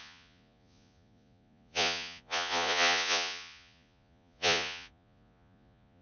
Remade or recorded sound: remade